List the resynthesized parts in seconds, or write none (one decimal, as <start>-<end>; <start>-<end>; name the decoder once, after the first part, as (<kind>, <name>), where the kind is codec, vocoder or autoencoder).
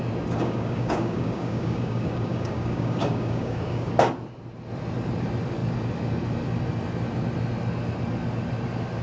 0.4-3.9 (codec, DAC)